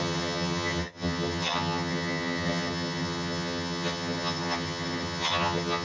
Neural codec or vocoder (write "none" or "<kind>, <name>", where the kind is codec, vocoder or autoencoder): vocoder, HiFi-GAN